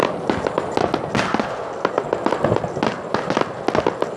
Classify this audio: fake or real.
real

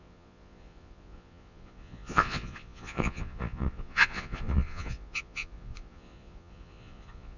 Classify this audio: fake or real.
fake